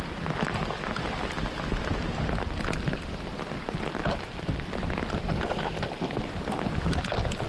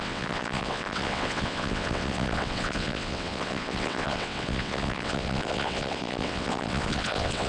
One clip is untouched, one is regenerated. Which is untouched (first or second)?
first